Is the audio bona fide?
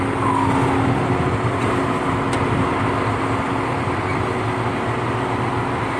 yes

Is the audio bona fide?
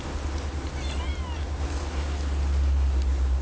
yes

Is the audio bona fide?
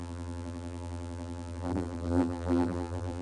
no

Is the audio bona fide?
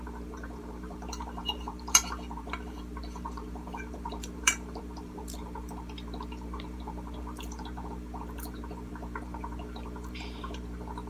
no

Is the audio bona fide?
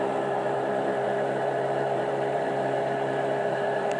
no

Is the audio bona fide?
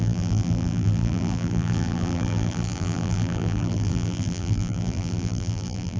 no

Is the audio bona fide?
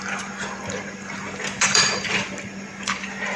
no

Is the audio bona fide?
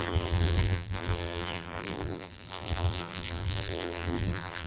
no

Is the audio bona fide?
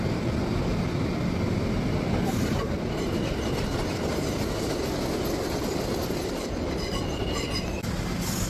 yes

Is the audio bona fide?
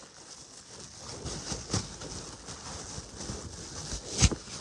yes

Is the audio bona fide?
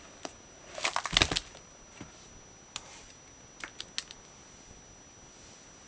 yes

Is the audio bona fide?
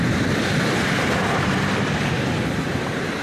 no